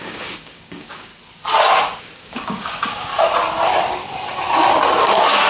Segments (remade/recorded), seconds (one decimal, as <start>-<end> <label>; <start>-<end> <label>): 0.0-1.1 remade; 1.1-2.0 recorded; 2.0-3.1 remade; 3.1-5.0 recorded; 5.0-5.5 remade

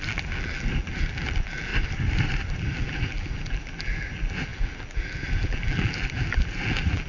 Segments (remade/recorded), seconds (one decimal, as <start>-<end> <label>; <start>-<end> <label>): 0.0-1.7 remade; 1.7-2.6 recorded; 2.6-7.1 remade

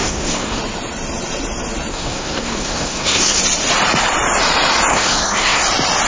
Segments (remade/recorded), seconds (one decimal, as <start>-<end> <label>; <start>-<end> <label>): 0.0-0.6 remade; 0.6-1.9 recorded; 1.9-3.4 remade; 3.4-4.9 recorded; 4.9-5.6 remade; 5.6-6.1 recorded

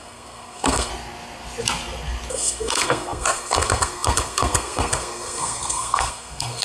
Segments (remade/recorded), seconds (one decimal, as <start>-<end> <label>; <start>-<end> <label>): 0.0-0.9 remade; 0.9-2.3 recorded; 2.3-6.6 remade